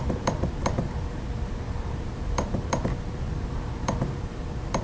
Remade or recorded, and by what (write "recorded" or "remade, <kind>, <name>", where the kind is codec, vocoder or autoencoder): remade, vocoder, BigVGAN v2